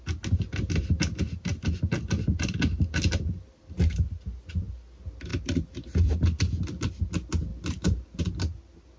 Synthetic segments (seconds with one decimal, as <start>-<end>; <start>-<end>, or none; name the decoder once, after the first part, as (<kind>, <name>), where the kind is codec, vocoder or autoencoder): none